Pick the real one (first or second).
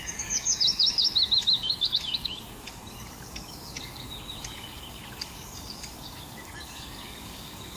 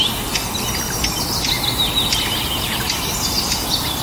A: second